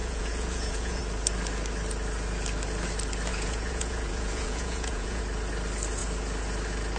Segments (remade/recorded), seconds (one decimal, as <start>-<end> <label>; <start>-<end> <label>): 0.0-1.0 remade; 1.0-3.3 recorded; 3.3-5.2 remade; 5.2-7.0 recorded